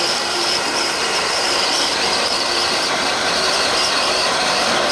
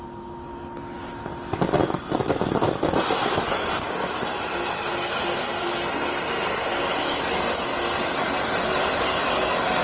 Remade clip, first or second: first